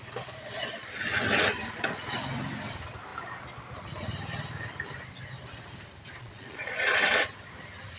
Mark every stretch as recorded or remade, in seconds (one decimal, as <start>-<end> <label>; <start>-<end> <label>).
0.0-6.1 recorded; 6.1-6.7 remade; 6.7-8.0 recorded